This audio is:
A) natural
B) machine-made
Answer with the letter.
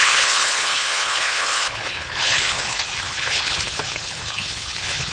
B